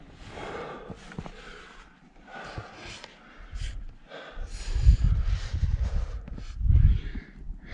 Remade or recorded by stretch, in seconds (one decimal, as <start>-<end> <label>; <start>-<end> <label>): 0.0-2.3 recorded; 2.3-3.0 remade; 3.0-7.7 recorded